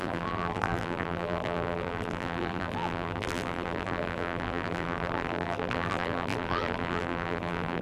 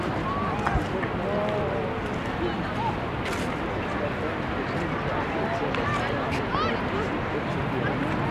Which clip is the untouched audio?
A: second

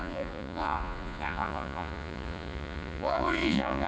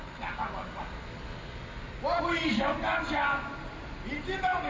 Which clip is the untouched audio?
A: second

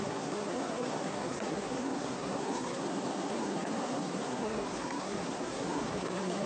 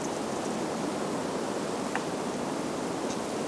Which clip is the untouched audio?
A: second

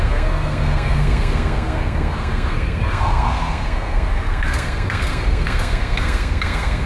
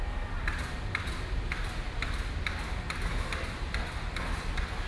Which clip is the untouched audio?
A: second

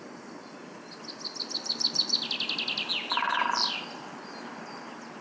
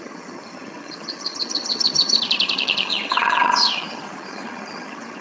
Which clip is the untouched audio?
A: first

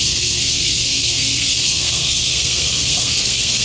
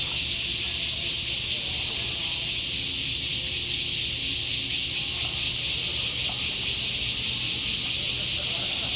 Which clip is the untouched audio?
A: second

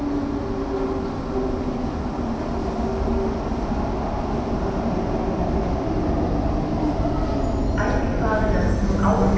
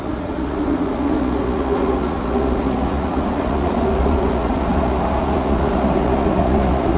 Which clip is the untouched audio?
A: first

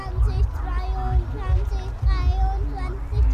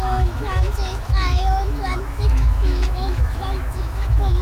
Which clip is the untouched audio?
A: first